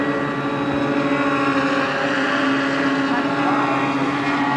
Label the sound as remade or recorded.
recorded